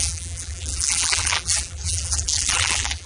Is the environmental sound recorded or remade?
remade